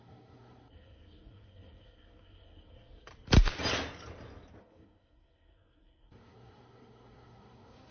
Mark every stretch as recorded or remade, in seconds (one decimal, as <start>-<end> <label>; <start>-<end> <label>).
0.0-3.1 remade; 3.1-4.6 recorded; 4.6-7.9 remade